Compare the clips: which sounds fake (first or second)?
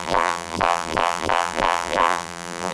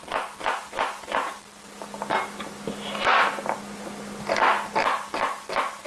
first